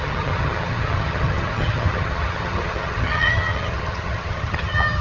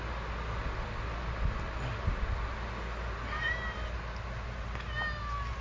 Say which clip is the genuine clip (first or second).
second